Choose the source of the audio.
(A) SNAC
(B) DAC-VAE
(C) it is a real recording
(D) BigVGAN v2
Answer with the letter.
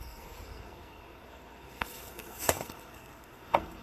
A